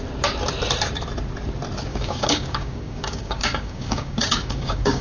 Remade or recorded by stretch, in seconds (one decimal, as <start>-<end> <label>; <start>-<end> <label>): 0.0-1.9 recorded; 1.9-5.0 remade